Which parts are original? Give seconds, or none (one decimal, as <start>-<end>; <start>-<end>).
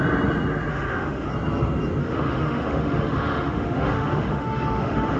0.0-0.7; 1.3-2.0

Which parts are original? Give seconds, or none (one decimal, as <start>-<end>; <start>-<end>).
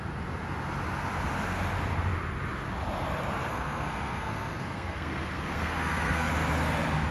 0.0-3.5; 6.3-7.1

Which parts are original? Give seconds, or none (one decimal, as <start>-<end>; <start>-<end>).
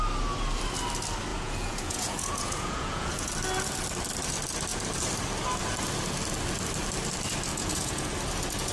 0.0-1.3; 3.3-7.5; 8.1-8.7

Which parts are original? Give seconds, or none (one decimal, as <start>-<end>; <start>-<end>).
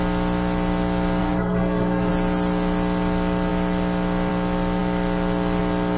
0.0-1.2; 2.1-6.0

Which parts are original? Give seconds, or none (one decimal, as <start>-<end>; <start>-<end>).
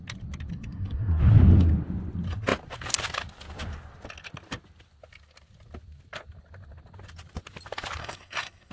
0.0-0.5; 1.2-8.0